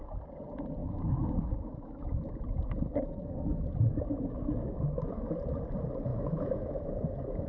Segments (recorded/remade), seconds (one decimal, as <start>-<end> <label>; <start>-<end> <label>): 0.0-0.8 recorded; 0.8-5.3 remade; 5.3-6.1 recorded; 6.1-7.5 remade